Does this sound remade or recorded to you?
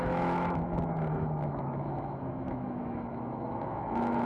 remade